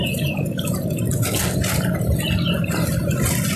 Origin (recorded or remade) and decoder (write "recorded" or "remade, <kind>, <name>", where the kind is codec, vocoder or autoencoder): recorded